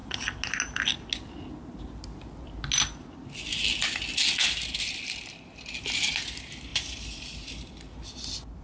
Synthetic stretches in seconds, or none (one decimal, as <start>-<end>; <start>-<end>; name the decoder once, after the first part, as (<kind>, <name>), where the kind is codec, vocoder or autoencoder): none